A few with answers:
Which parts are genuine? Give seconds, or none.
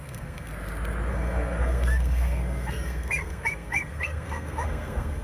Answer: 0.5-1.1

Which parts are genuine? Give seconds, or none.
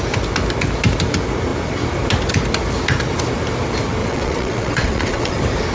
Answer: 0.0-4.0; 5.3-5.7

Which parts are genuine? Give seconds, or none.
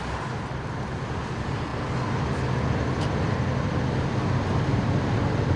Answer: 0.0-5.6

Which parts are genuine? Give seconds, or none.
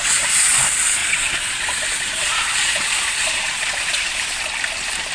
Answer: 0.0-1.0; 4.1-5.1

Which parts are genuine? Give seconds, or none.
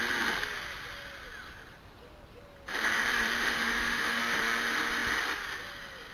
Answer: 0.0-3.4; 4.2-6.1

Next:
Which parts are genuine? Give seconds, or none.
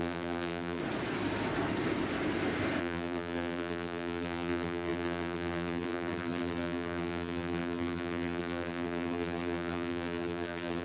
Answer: 0.8-2.8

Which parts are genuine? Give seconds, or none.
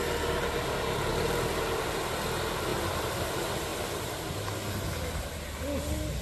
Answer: 0.0-1.1; 2.0-2.7; 3.3-6.2